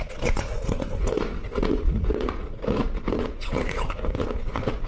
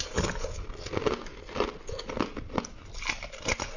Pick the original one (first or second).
second